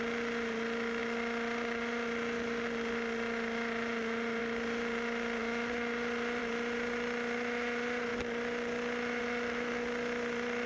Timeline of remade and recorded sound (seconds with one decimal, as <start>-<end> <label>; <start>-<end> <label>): 0.0-10.7 recorded